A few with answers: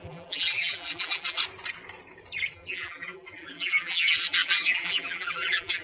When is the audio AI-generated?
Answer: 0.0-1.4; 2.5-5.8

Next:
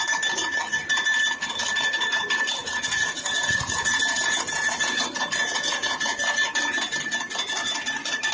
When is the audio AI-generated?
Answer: 2.6-6.2

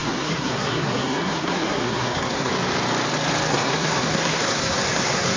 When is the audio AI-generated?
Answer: 0.0-2.5; 3.5-5.4

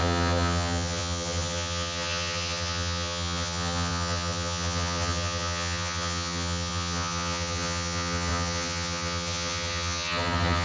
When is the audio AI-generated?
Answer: 0.0-10.6

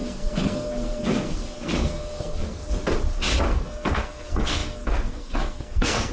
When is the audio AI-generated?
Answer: 0.0-2.6; 3.4-6.1

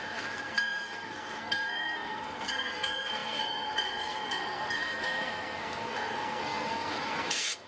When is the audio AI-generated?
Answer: 0.0-7.7